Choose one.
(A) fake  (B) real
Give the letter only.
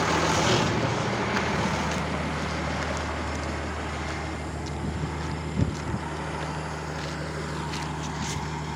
B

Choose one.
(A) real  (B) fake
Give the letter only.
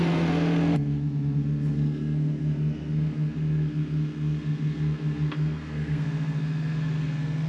B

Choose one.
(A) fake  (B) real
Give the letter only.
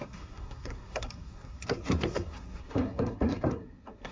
A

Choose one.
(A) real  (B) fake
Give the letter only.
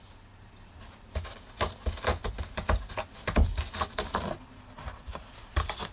A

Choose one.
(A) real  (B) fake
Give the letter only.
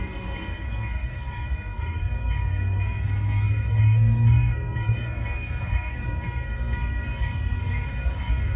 B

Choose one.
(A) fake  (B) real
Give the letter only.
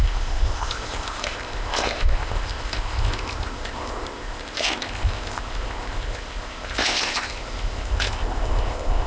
A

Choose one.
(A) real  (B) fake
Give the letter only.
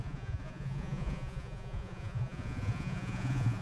B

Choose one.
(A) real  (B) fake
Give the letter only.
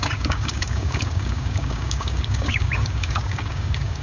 B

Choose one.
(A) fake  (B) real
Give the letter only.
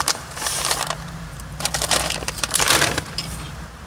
A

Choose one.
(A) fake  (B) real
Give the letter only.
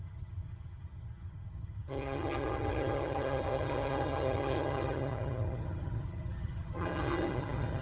A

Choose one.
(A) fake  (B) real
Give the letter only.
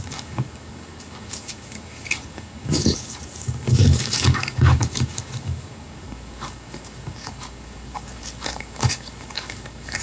A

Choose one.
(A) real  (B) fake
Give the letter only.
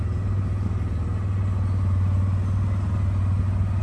A